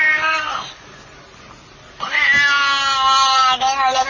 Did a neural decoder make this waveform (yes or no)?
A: no